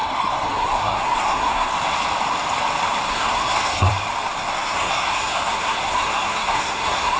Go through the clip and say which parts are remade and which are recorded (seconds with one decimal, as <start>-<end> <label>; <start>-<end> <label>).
0.0-1.7 remade; 1.7-3.1 recorded; 3.1-3.9 remade; 3.9-4.5 recorded; 4.5-7.2 remade